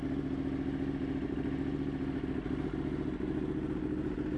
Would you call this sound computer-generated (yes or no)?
no